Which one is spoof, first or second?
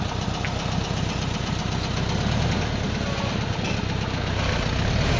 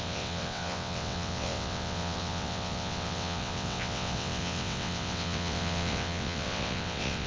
second